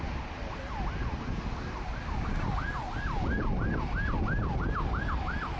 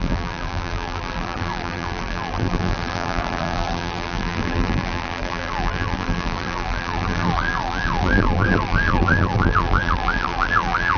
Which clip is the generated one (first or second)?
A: second